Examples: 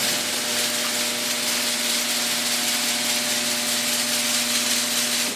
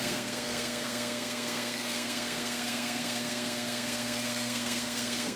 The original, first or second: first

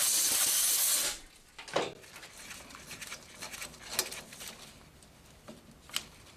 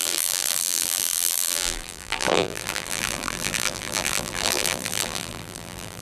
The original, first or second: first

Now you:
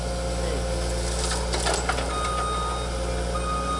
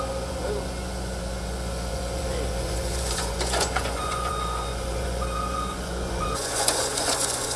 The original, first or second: first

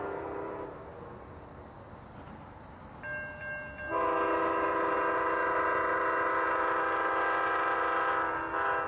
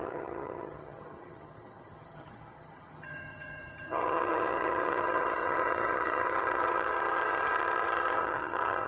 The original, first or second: first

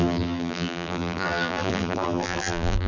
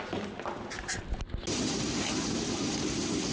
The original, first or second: second